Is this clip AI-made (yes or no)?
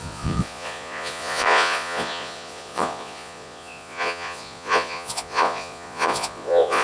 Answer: yes